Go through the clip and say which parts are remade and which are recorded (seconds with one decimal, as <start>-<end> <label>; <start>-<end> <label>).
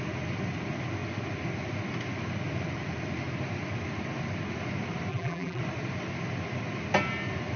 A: 0.0-5.1 recorded; 5.1-5.6 remade; 5.6-7.6 recorded